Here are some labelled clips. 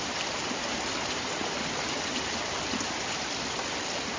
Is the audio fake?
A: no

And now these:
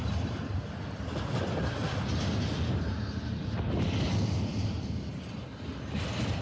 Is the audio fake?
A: no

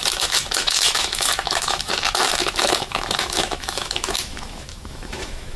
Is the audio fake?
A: yes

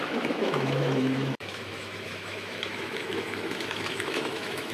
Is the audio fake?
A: yes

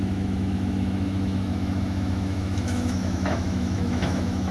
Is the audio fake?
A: yes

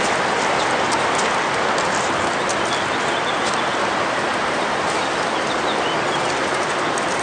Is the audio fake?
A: no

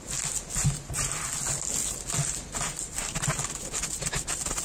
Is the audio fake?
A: no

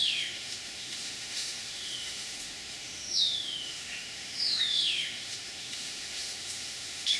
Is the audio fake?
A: yes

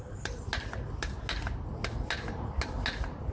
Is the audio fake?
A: no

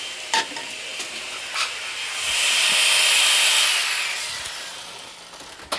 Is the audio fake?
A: no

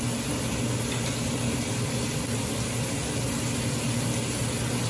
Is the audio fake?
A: no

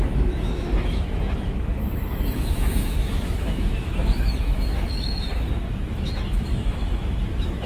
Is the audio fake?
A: yes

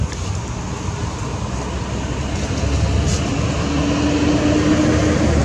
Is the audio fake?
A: no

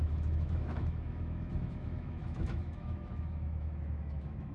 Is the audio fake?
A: yes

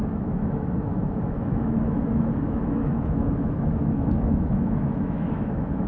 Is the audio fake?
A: yes